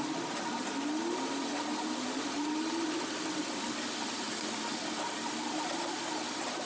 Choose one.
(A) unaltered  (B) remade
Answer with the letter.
A